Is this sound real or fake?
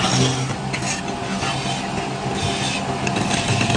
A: real